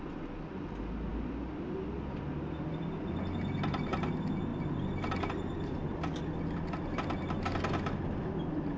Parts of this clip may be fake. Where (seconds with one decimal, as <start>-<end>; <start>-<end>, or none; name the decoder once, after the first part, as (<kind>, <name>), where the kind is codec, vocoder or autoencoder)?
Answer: none